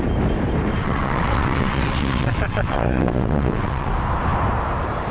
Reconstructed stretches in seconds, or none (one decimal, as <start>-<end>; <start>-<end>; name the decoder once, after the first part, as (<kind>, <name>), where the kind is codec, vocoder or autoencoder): 0.8-3.9 (vocoder, WaveNeXt)